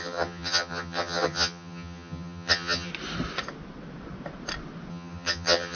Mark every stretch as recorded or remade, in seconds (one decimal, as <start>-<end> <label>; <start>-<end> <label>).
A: 0.0-2.9 remade; 2.9-4.9 recorded; 4.9-5.8 remade